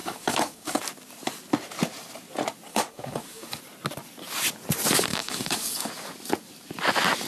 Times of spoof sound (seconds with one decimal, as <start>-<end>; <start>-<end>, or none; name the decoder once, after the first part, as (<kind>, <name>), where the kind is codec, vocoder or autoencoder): 0.0-0.8 (codec, DAC); 2.7-3.6; 5.1-5.9